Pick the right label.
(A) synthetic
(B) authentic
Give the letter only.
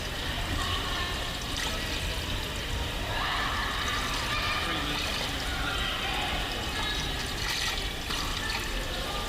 B